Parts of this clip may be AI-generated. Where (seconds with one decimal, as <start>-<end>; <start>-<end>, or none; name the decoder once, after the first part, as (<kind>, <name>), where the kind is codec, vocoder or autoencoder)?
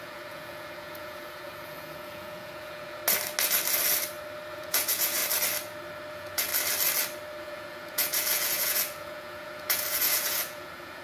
0.0-3.0 (vocoder, Vocos); 4.5-5.2; 6.1-6.5; 7.4-11.0